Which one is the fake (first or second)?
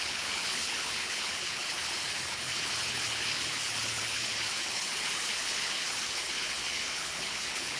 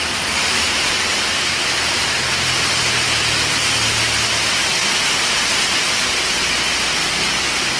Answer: first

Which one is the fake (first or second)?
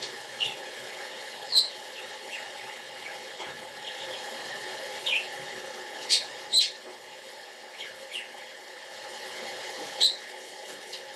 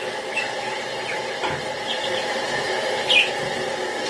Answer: first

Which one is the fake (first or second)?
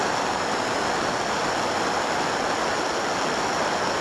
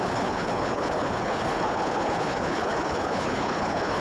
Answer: second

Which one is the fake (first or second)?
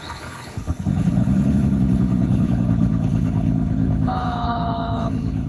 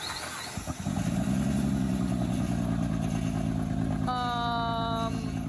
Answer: first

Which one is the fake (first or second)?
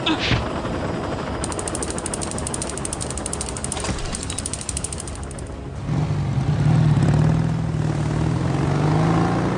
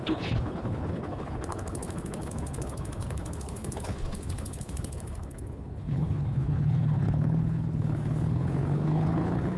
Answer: second